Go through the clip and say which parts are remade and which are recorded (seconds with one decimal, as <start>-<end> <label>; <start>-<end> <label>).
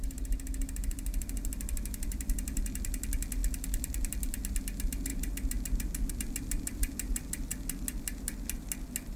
0.0-9.2 recorded